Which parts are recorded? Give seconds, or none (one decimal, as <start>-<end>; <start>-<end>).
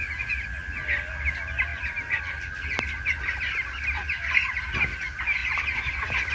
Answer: 0.0-6.3